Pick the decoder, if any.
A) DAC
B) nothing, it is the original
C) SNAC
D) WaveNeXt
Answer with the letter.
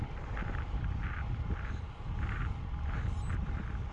B